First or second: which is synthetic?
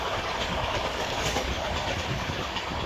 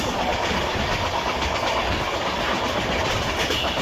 first